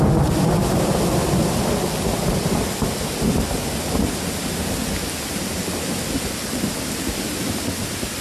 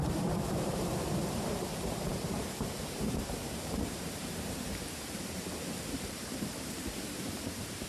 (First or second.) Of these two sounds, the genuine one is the first